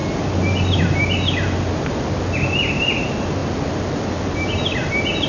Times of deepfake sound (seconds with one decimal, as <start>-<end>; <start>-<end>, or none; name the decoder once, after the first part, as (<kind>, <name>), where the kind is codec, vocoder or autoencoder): none